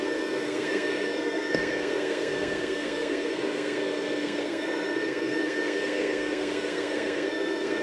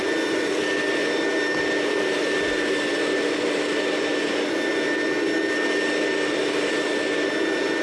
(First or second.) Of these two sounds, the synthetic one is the first